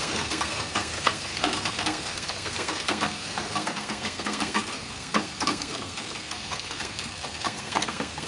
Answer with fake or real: fake